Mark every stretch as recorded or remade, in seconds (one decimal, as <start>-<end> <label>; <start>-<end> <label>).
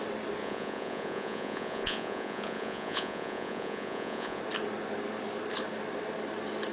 0.0-0.4 recorded; 0.4-4.4 remade; 4.4-6.7 recorded